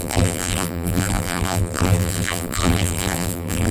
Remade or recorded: remade